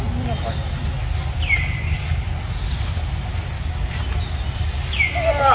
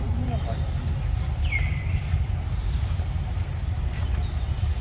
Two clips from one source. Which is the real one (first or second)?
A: first